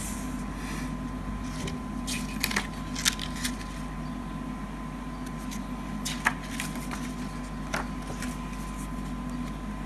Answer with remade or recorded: recorded